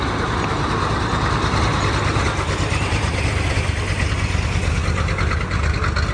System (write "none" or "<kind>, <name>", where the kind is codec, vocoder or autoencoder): none